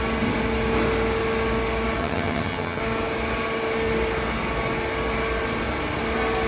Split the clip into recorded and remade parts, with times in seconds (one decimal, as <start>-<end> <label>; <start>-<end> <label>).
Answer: 0.0-2.0 recorded; 2.0-2.8 remade; 2.8-6.5 recorded